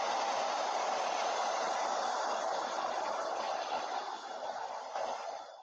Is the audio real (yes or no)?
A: yes